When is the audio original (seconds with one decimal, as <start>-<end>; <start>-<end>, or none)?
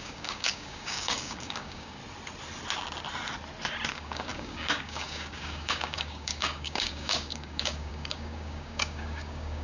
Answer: 2.0-3.9